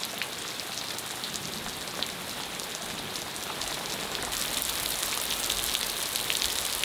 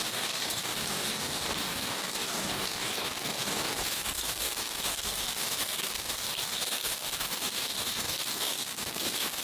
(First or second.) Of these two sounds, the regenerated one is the second